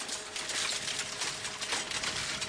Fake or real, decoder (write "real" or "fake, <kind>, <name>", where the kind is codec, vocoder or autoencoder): real